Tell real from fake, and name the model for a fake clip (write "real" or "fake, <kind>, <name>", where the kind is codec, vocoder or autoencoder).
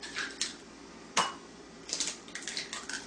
real